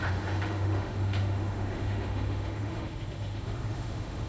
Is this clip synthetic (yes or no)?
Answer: yes